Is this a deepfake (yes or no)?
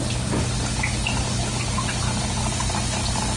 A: no